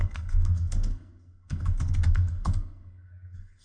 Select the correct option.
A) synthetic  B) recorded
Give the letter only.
A